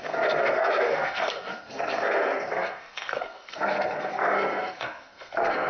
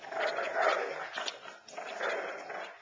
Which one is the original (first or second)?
second